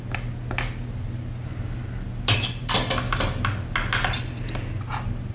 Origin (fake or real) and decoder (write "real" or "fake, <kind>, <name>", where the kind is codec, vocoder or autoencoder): real